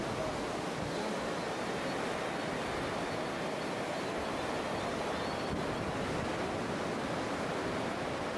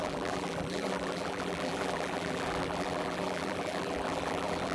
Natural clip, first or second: first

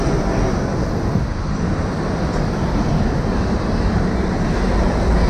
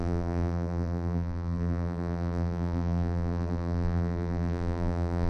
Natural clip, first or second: first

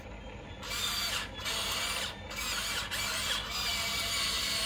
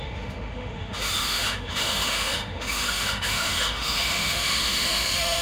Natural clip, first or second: first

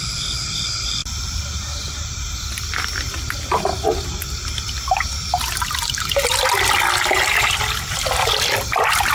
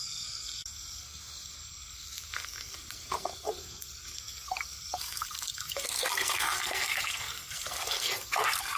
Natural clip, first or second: first